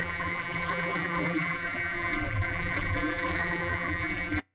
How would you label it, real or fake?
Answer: fake